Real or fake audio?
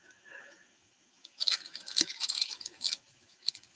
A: fake